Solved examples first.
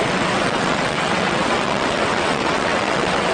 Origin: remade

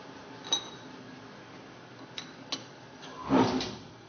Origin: recorded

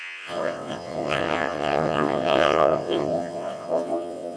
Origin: remade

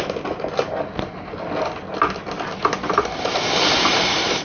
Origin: recorded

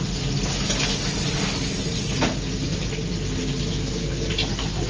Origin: recorded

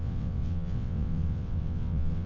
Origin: remade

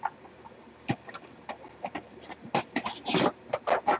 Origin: recorded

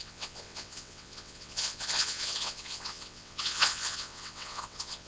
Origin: remade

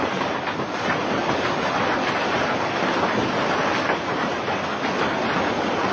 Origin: recorded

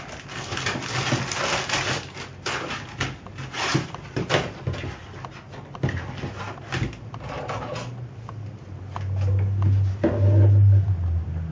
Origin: recorded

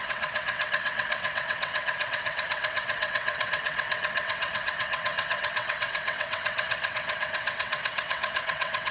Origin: remade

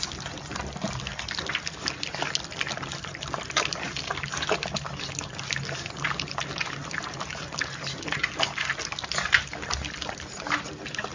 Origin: recorded